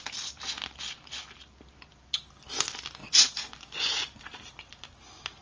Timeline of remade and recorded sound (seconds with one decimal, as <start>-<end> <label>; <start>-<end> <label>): 0.0-3.0 recorded; 3.0-4.2 remade; 4.2-5.4 recorded